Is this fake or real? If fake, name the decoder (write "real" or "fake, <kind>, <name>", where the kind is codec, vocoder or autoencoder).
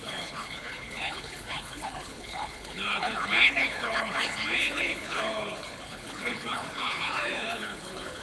fake, codec, HILCodec